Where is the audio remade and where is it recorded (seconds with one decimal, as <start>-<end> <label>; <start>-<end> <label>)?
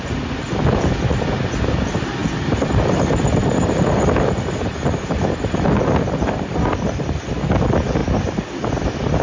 0.0-2.2 recorded; 2.2-3.0 remade; 3.0-9.2 recorded